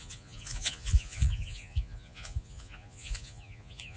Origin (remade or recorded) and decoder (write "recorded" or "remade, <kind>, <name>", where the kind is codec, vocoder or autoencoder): remade, vocoder, Vocos